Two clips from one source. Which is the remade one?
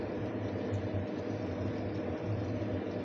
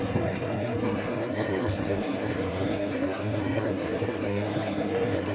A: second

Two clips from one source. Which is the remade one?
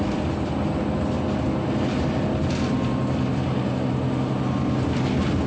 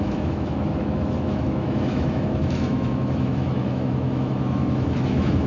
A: second